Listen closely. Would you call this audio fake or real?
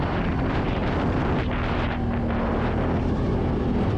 real